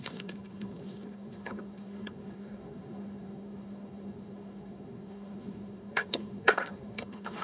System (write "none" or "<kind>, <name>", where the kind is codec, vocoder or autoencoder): codec, SNAC